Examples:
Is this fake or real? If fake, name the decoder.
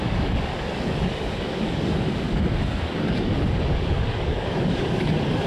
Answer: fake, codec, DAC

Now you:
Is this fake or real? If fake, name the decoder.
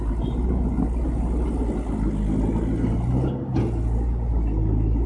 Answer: real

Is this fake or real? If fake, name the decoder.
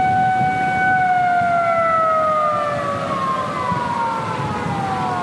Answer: real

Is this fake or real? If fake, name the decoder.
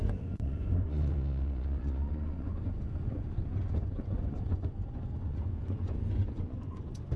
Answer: fake, vocoder, Vocos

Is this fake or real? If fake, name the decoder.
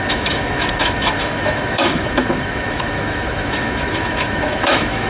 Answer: fake, autoencoder, DAC-VAE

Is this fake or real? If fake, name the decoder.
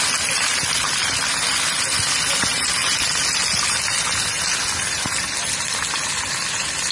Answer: real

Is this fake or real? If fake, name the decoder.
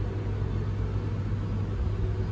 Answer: real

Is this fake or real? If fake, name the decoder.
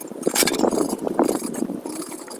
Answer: fake, vocoder, BigVGAN v2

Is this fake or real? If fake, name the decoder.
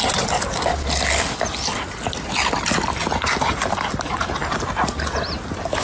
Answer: real